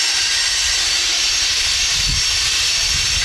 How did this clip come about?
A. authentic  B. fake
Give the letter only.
A